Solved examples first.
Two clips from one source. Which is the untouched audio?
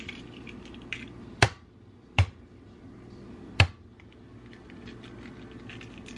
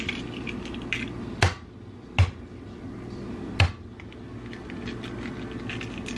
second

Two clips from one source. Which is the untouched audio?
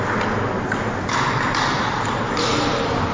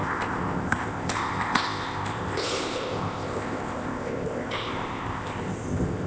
first